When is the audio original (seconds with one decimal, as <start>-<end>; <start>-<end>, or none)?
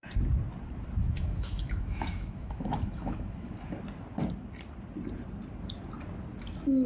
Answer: 0.0-1.0; 3.5-6.9